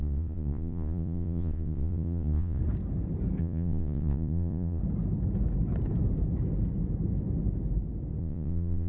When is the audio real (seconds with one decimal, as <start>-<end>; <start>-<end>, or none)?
2.6-3.4; 4.8-8.2